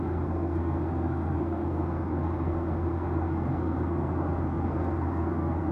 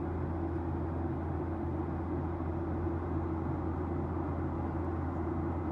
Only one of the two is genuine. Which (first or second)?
second